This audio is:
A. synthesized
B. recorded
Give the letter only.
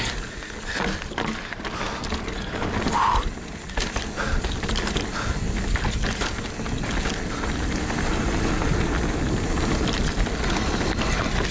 B